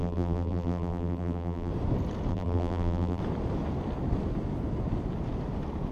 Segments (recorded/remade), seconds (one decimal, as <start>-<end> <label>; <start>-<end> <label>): 0.0-1.7 remade; 1.7-2.3 recorded; 2.3-3.2 remade; 3.2-5.9 recorded